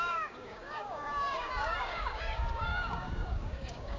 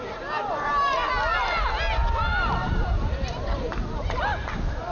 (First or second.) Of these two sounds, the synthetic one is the first